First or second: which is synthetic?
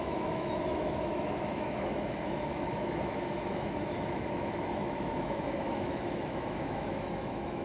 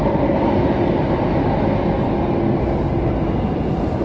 first